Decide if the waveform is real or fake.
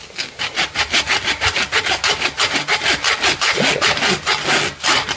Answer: real